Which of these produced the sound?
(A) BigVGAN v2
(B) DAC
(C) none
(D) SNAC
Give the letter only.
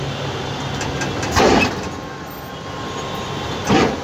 C